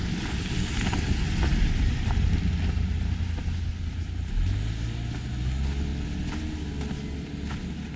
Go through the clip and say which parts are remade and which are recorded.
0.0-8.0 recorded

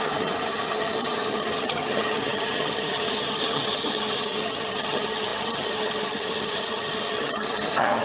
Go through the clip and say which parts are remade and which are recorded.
0.0-8.0 remade

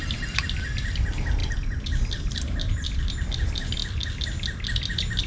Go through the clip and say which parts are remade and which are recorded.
0.0-5.3 recorded

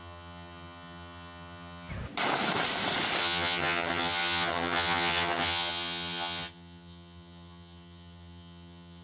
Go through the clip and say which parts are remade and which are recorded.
0.0-1.9 remade; 1.9-3.2 recorded; 3.2-9.0 remade

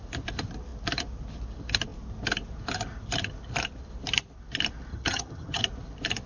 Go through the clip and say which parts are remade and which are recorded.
0.0-4.9 recorded; 4.9-5.6 remade; 5.6-6.3 recorded

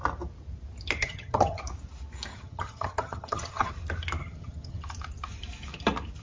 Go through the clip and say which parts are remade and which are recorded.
0.0-1.0 recorded; 1.0-1.6 remade; 1.6-2.3 recorded; 2.3-3.7 remade; 3.7-4.2 recorded; 4.2-4.8 remade; 4.8-6.2 recorded

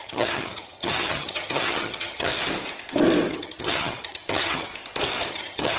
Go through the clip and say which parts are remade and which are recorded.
0.0-2.3 remade; 2.3-3.3 recorded; 3.3-4.7 remade; 4.7-5.3 recorded; 5.3-5.8 remade